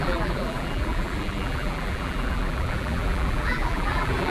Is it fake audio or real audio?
fake